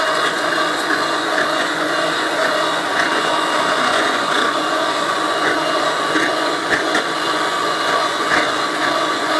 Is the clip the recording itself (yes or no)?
no